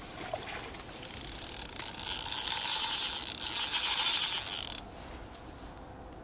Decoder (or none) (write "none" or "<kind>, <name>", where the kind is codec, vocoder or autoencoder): none